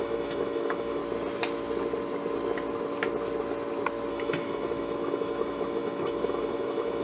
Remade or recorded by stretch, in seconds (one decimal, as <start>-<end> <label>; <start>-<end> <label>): 0.0-1.0 remade; 1.0-4.1 recorded; 4.1-7.0 remade